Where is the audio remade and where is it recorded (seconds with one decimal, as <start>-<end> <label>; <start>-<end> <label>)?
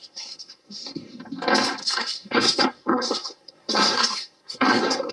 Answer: 0.0-1.2 remade; 1.2-1.8 recorded; 1.8-5.1 remade